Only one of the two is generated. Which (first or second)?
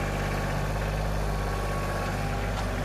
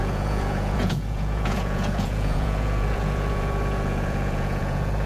second